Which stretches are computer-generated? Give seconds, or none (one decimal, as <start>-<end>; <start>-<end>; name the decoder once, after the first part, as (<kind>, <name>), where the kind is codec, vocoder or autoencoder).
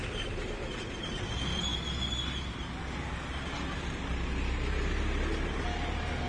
none